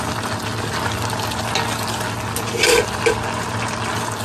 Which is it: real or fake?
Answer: real